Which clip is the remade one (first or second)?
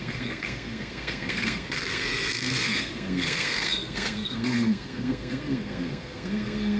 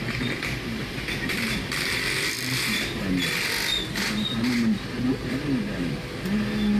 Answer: first